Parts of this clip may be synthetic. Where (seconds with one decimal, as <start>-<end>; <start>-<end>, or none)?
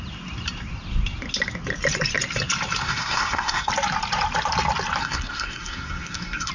2.8-3.7; 5.0-6.5